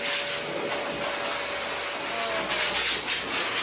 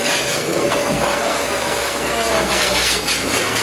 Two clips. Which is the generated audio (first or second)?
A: second